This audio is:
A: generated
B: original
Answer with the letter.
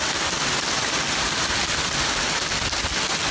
B